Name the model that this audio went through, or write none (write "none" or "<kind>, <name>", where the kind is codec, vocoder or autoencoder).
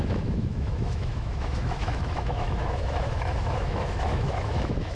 autoencoder, DAC-VAE